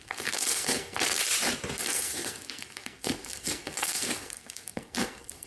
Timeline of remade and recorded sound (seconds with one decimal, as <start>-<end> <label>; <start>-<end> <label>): 0.0-1.2 remade; 1.2-1.8 recorded; 1.8-5.5 remade

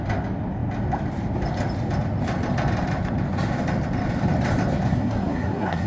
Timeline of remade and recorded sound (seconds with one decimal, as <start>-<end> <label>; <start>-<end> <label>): 0.0-4.9 recorded; 4.9-5.9 remade

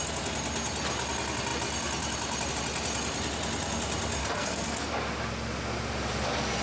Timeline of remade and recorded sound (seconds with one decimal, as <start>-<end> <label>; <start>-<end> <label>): 0.0-4.2 recorded; 4.2-4.9 remade; 4.9-6.6 recorded

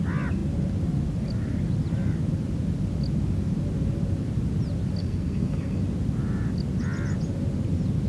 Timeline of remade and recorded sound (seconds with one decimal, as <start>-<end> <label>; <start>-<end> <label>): 0.0-5.0 recorded; 5.0-5.8 remade; 5.8-8.1 recorded

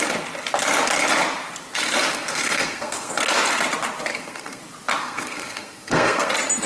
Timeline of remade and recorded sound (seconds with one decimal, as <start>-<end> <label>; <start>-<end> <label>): 0.0-2.1 recorded; 2.1-3.2 remade; 3.2-4.1 recorded; 4.1-4.6 remade; 4.6-5.0 recorded; 5.0-6.3 remade; 6.3-6.7 recorded

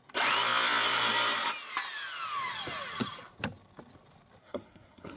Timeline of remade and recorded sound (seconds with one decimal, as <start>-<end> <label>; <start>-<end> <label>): 0.0-4.4 recorded; 4.4-5.2 remade

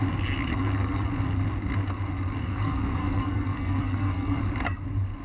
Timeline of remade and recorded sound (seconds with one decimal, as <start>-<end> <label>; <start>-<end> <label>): 0.0-0.5 recorded; 0.5-1.1 remade; 1.1-2.4 recorded; 2.4-4.4 remade; 4.4-5.2 recorded